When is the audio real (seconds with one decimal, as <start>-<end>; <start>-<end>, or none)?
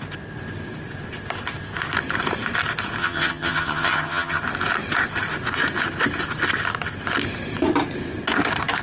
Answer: 0.0-3.0; 4.4-8.8